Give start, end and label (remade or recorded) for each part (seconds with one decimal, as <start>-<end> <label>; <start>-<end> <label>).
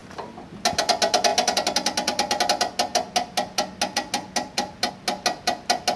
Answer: 0.0-6.0 recorded